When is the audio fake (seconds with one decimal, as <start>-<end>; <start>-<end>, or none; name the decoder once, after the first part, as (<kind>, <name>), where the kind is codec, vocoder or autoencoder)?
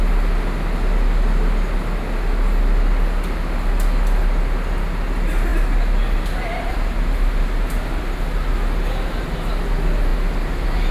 none